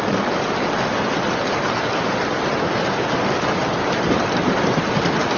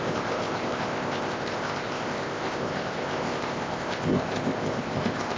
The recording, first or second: first